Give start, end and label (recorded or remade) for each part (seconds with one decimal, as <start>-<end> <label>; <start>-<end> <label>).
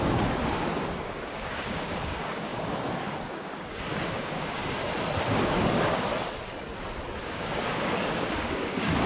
0.0-4.6 remade; 4.6-5.3 recorded; 5.3-6.1 remade; 6.1-7.2 recorded; 7.2-9.1 remade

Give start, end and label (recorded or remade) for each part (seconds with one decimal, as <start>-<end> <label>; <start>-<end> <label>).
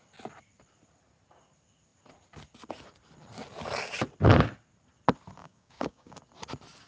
0.0-5.4 recorded; 5.4-6.2 remade; 6.2-6.9 recorded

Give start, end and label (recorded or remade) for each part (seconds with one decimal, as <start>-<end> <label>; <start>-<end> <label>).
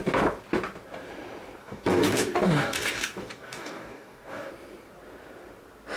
0.0-1.6 recorded; 1.6-4.5 remade; 4.5-6.0 recorded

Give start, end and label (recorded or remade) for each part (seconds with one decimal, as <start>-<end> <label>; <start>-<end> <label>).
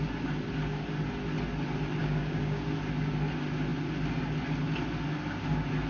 0.0-2.0 recorded; 2.0-2.6 remade; 2.6-5.9 recorded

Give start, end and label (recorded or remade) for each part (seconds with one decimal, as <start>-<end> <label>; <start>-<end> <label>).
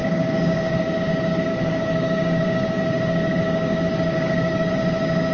0.0-0.8 remade; 0.8-1.5 recorded; 1.5-4.7 remade; 4.7-5.3 recorded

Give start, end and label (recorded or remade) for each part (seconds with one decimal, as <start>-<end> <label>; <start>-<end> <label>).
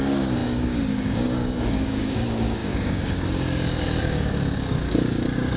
0.0-5.6 remade